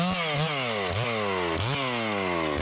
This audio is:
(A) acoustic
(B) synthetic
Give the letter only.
A